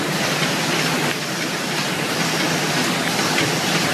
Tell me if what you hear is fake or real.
real